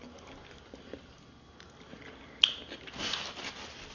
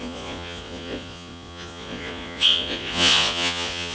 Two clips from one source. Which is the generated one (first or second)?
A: second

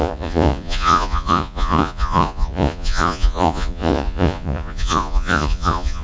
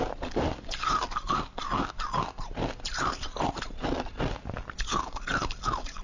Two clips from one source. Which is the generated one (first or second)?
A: first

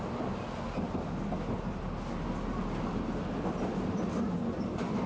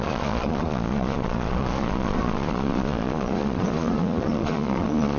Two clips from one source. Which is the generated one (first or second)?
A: second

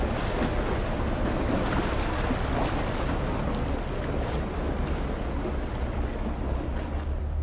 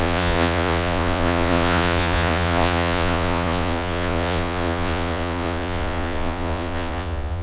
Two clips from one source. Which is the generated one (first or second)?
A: second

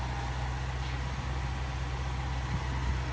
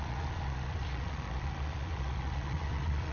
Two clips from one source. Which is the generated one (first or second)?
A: second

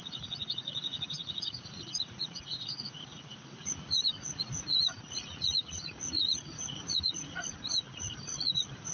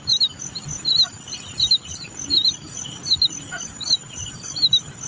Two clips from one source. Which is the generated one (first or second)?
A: first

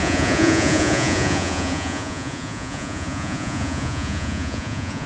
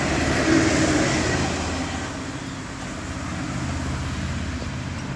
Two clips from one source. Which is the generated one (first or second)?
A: first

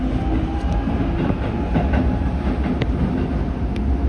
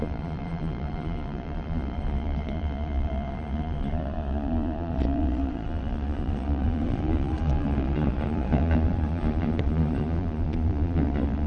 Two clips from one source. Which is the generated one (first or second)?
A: second